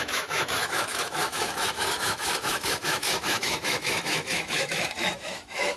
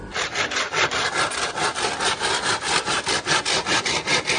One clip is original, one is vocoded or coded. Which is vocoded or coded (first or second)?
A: first